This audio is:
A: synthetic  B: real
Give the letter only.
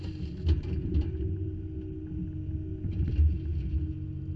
B